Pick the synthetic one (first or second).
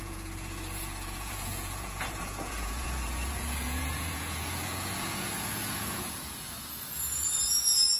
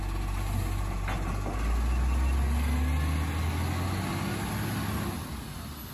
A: first